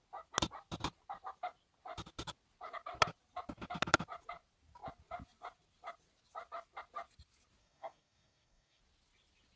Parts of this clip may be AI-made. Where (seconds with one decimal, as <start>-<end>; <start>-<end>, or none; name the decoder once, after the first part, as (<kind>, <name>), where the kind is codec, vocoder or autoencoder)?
7.6-8.8 (codec, DAC)